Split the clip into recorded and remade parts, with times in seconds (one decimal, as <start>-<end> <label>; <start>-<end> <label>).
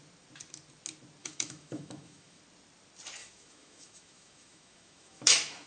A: 0.0-1.2 recorded; 1.2-2.4 remade; 2.4-3.2 recorded; 3.2-5.7 remade